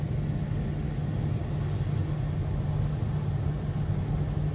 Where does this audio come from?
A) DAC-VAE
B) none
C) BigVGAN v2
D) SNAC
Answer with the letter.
B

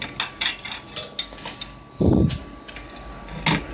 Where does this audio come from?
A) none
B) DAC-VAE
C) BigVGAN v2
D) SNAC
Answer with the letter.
A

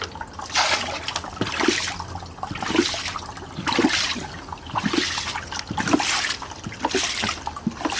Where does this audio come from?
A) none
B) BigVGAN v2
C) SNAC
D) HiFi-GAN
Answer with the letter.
A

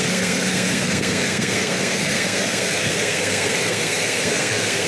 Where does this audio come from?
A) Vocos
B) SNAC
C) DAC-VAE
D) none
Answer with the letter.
B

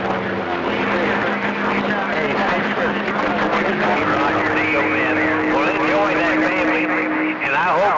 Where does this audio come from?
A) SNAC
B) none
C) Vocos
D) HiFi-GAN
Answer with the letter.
B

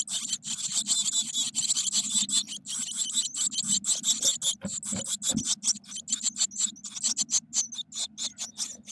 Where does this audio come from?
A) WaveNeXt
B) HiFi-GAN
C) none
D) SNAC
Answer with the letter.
C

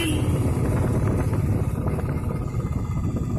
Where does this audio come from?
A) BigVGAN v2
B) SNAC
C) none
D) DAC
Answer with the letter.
C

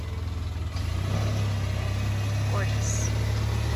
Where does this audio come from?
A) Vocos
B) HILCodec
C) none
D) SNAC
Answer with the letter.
C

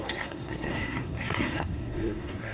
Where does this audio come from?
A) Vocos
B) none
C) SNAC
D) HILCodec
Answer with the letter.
C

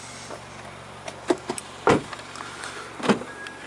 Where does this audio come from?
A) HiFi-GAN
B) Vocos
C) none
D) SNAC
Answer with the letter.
C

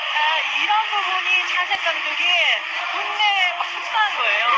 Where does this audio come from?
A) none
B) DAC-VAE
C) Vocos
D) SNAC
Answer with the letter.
A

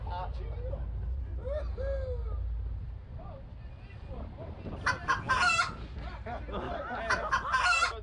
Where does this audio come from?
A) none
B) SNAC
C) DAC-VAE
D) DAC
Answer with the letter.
A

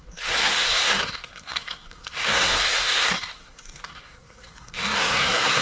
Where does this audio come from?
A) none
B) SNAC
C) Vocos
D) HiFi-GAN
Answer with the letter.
B